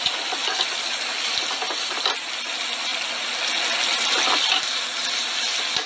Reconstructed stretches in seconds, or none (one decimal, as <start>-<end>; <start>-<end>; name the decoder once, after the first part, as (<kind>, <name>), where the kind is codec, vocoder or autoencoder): none